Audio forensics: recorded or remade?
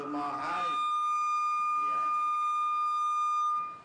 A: recorded